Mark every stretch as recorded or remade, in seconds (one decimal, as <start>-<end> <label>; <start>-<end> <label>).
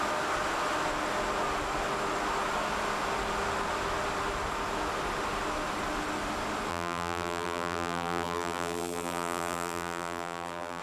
0.0-6.7 recorded; 6.7-10.8 remade